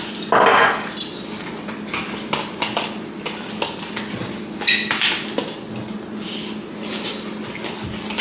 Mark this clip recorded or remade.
recorded